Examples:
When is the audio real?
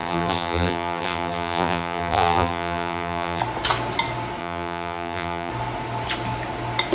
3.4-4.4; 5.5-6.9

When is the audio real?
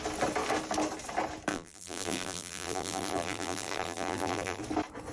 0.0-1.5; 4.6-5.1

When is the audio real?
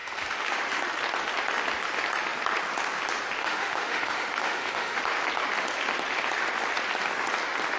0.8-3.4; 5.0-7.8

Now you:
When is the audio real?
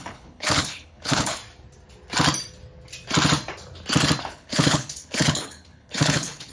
1.4-4.2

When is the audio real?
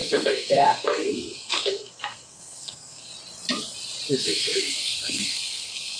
3.1-4.1